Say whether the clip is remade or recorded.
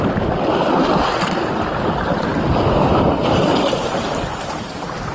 recorded